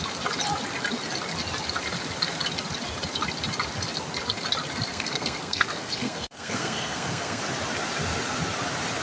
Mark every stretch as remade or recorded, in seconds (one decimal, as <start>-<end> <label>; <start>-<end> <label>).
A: 0.0-4.9 recorded; 4.9-7.4 remade; 7.4-9.0 recorded